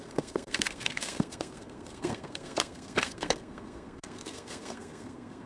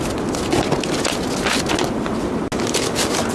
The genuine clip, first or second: second